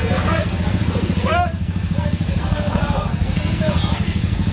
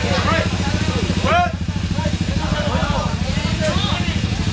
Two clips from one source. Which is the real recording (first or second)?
second